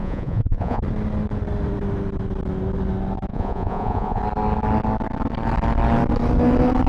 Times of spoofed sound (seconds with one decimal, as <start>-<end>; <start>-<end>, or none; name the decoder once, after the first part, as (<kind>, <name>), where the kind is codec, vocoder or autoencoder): 0.0-0.8 (vocoder, Vocos); 3.3-4.2